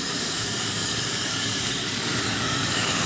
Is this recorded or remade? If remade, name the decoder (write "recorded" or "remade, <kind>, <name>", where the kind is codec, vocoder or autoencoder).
remade, codec, DAC